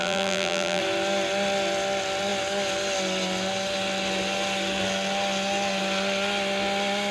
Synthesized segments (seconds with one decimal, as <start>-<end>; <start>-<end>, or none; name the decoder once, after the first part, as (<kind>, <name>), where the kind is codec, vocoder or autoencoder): 0.0-0.8 (vocoder, BigVGAN v2)